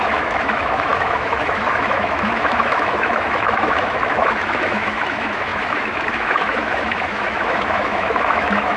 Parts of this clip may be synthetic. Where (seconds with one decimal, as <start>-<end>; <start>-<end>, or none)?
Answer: 0.0-8.8